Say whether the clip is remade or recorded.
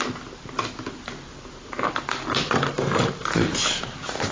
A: recorded